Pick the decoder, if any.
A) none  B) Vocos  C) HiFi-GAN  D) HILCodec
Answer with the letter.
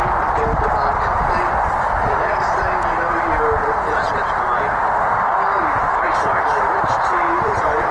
A